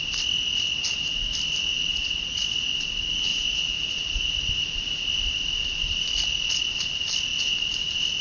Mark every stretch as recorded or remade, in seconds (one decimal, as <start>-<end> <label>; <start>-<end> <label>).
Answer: 0.0-1.7 recorded; 1.7-2.9 remade; 2.9-3.3 recorded; 3.3-4.5 remade; 4.5-8.2 recorded